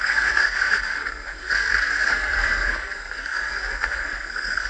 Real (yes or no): no